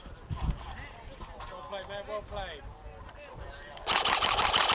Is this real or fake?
real